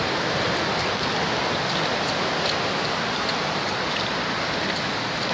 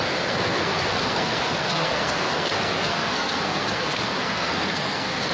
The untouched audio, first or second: first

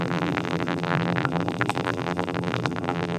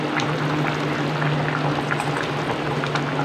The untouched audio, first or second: second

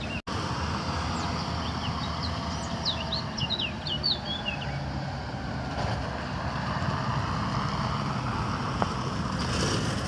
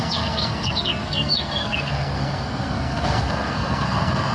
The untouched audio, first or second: first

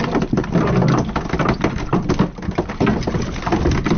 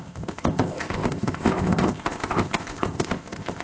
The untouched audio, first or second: first